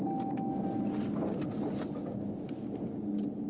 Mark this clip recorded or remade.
recorded